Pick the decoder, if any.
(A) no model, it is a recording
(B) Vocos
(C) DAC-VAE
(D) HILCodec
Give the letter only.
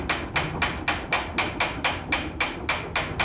A